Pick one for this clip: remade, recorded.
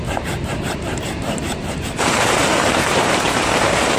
remade